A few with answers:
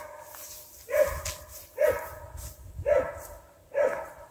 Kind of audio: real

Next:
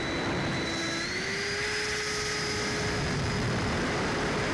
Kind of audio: fake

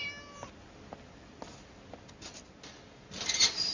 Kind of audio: real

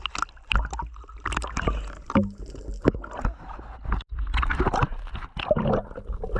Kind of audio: real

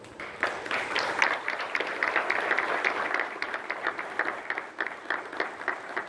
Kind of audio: real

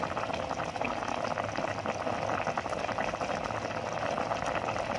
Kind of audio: real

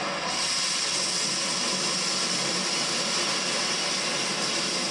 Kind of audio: real